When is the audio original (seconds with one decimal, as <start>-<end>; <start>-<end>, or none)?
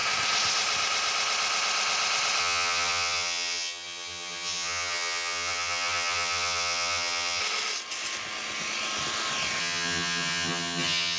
0.0-2.4; 7.4-9.6